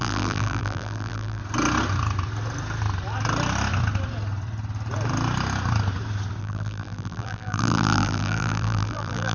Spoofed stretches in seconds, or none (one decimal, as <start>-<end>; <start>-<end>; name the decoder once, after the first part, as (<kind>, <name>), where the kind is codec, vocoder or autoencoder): 0.0-1.4 (vocoder, BigVGAN v2); 6.4-9.3